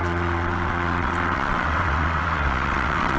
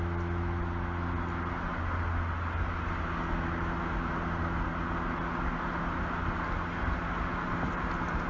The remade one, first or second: first